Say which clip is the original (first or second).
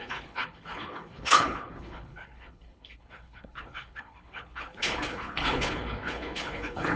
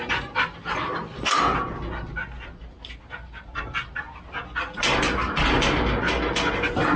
second